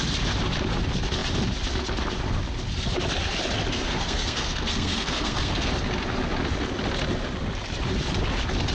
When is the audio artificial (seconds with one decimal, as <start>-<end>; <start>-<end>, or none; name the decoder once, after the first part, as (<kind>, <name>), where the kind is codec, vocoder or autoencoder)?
3.7-5.7 (codec, SNAC)